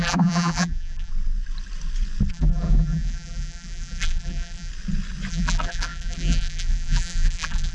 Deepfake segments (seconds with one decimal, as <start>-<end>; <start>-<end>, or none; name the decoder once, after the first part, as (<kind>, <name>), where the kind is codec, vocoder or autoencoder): 0.0-1.1 (vocoder, BigVGAN v2); 2.3-4.7; 5.3-7.7